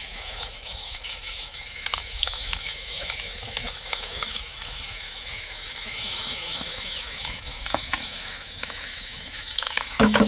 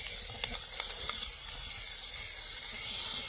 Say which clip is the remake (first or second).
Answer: first